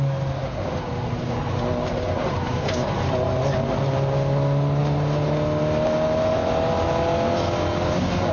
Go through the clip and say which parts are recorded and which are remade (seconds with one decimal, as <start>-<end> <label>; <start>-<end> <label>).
0.0-8.3 recorded